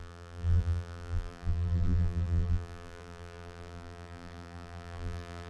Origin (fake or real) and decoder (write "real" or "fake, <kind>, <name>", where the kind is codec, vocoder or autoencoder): fake, vocoder, BigVGAN v2